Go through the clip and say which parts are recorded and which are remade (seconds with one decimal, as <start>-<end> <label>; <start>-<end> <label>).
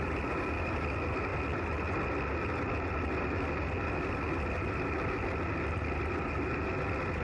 0.0-7.2 recorded